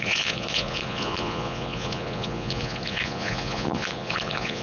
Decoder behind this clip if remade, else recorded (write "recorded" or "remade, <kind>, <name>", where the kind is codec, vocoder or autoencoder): remade, vocoder, Vocos